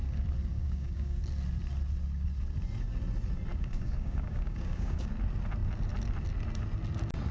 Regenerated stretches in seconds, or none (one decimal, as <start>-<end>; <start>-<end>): 0.5-1.2; 3.5-5.1